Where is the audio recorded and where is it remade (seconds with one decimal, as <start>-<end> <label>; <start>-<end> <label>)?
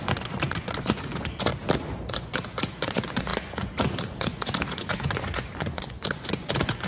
0.0-1.5 remade; 1.5-2.1 recorded; 2.1-6.9 remade